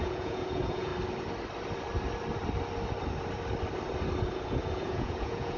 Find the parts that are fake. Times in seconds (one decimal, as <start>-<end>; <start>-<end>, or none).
0.0-0.9; 4.3-5.6